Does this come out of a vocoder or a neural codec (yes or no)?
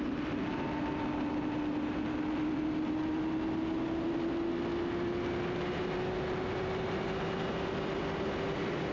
no